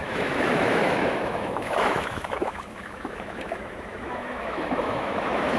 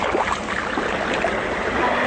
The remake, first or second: first